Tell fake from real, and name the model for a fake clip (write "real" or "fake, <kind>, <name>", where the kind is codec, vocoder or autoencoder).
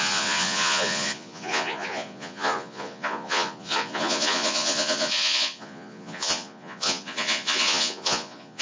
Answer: fake, vocoder, Vocos